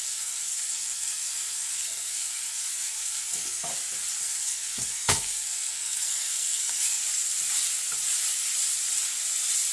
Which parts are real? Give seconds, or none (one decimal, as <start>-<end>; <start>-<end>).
3.7-4.2; 7.0-9.7